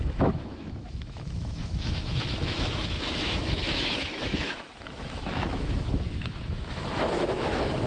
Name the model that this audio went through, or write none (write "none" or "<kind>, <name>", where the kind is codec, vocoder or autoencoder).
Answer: autoencoder, DAC-VAE